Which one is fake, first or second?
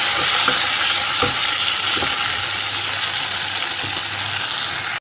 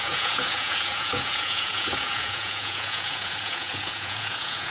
second